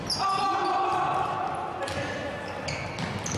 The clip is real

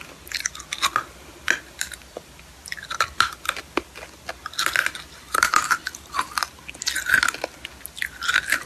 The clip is real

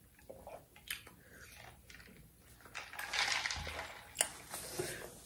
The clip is real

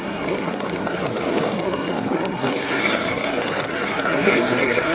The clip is fake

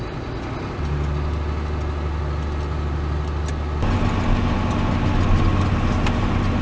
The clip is real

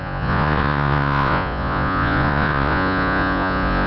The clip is fake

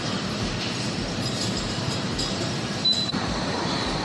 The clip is fake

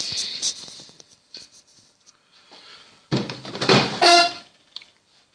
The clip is fake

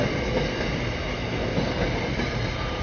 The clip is real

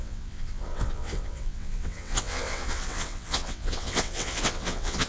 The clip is fake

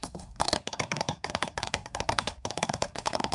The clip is fake